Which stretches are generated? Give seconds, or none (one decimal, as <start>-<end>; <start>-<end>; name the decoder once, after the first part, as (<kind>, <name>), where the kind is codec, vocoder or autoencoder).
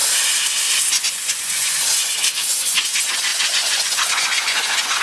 0.8-5.0 (vocoder, Vocos)